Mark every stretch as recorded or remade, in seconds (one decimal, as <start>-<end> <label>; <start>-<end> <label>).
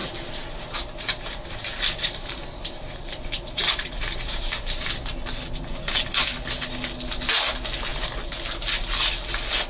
0.0-4.9 remade; 4.9-9.7 recorded